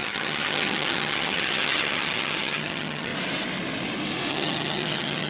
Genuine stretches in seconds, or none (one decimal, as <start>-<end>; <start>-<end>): 3.1-4.3